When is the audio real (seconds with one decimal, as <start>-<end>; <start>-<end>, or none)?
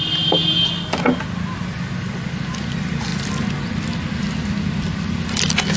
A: 0.0-5.8